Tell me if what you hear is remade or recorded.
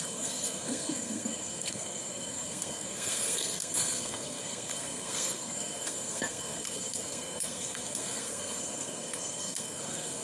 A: remade